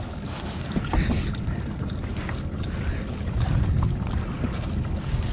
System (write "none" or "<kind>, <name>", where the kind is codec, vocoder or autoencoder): none